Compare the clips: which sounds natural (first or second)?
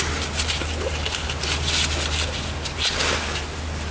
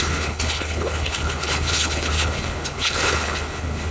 first